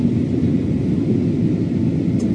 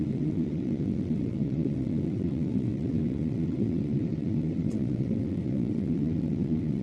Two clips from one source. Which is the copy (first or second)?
second